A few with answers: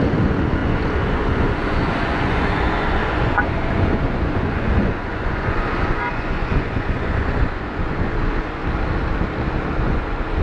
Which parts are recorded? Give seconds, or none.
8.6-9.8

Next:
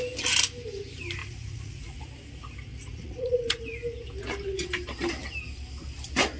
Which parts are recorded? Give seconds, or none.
0.0-1.2; 2.0-2.7; 3.6-6.4